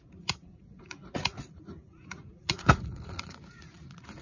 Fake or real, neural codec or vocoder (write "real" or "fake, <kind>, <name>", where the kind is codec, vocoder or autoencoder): fake, vocoder, Vocos